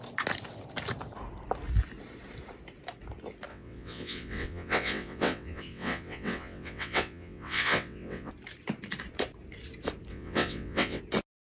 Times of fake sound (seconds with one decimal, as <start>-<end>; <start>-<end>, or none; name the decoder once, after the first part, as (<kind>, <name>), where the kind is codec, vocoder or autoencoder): 3.5-8.3 (vocoder, WaveNeXt); 10.1-11.0

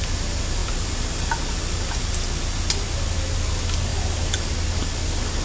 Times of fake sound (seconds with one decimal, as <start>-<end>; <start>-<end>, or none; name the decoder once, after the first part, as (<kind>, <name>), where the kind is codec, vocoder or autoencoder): none

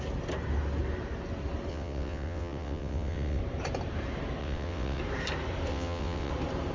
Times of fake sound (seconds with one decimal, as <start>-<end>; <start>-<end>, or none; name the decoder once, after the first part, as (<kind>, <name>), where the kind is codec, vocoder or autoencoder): 1.7-3.4 (vocoder, WaveNeXt); 4.4-5.0; 5.7-6.3

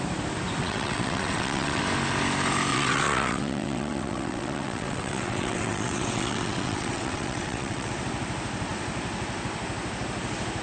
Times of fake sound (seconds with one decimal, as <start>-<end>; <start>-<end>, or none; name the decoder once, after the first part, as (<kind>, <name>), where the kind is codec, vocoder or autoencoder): 0.6-1.8 (vocoder, WaveNeXt); 2.7-7.9

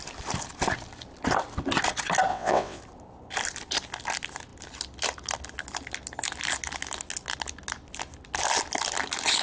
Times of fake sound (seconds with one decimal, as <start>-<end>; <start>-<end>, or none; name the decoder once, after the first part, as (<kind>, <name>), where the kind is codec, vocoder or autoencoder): 2.3-2.8 (vocoder, WaveNeXt)

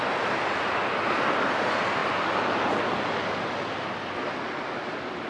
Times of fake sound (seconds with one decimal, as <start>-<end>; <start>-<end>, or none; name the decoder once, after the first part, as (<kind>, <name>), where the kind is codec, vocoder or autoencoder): none

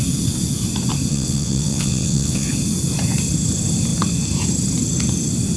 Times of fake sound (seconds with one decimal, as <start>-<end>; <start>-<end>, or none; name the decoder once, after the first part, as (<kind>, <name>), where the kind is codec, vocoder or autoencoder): 1.1-2.5 (vocoder, WaveNeXt)

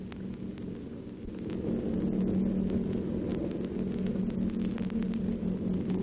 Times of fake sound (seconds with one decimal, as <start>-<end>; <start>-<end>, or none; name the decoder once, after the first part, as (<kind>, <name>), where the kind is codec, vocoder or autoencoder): none